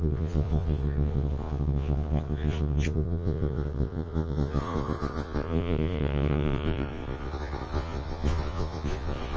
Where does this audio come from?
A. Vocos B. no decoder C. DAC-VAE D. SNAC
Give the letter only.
A